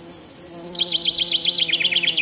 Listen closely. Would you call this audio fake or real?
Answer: real